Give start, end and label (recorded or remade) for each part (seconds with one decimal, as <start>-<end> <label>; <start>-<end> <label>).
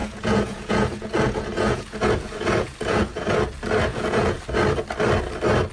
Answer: 0.0-3.4 remade; 3.4-3.9 recorded; 3.9-4.4 remade; 4.4-5.7 recorded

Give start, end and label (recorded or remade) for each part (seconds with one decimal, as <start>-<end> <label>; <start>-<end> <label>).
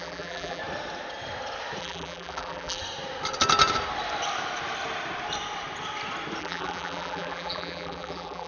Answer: 0.0-0.6 remade; 0.6-1.8 recorded; 1.8-2.8 remade; 2.8-6.4 recorded; 6.4-8.5 remade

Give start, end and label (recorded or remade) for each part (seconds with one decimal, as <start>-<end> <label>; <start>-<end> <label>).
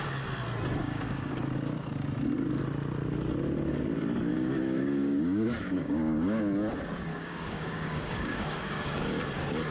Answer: 0.0-0.8 recorded; 0.8-1.4 remade; 1.4-4.3 recorded; 4.3-6.4 remade; 6.4-7.1 recorded; 7.1-9.2 remade; 9.2-9.7 recorded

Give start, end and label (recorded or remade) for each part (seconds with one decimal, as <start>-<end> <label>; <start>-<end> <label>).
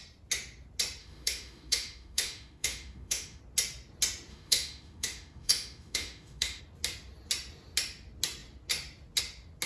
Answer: 0.0-1.0 recorded; 1.0-3.4 remade; 3.4-4.3 recorded; 4.3-6.6 remade; 6.6-9.7 recorded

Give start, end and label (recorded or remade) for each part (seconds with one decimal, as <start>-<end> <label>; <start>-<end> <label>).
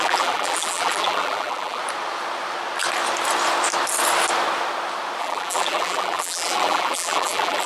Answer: 0.0-1.8 remade; 1.8-5.2 recorded; 5.2-7.7 remade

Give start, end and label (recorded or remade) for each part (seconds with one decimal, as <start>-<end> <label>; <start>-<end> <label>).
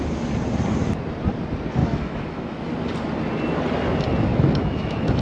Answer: 0.0-1.8 recorded; 1.8-2.6 remade; 2.6-4.3 recorded; 4.3-5.2 remade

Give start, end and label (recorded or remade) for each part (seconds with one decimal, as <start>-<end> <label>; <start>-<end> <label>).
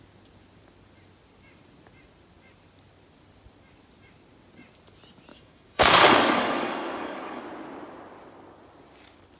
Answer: 0.0-5.3 recorded; 5.3-7.4 remade; 7.4-9.4 recorded